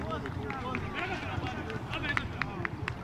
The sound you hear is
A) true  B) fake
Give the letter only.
A